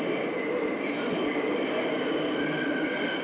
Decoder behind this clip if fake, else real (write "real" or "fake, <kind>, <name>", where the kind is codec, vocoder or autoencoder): real